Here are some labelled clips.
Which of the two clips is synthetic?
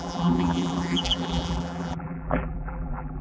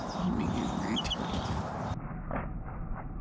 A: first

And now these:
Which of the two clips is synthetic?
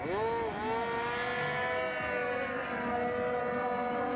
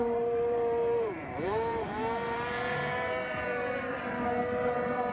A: second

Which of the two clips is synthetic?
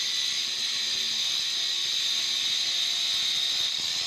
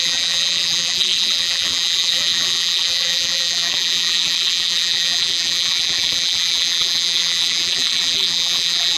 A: second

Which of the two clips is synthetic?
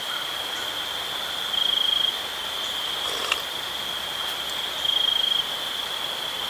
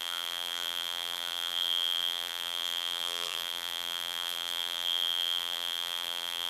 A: second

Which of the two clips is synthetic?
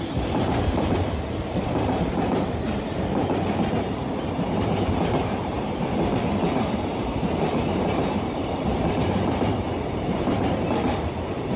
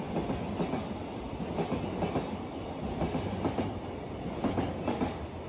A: first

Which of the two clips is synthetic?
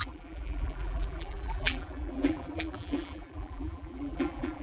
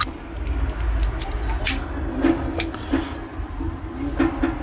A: first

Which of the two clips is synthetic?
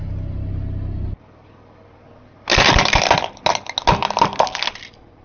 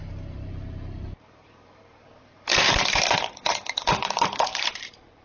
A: second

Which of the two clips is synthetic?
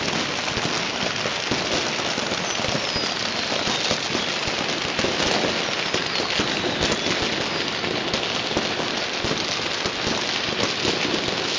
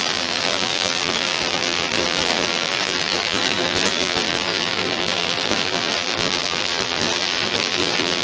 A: second